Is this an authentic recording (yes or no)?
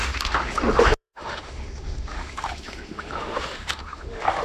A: no